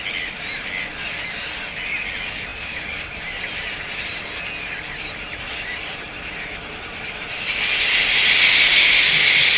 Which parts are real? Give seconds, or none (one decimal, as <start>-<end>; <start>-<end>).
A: 0.0-2.5; 4.2-9.6